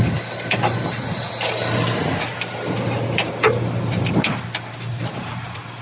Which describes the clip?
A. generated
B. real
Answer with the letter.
B